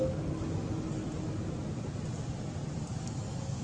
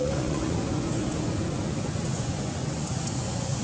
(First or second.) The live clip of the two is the first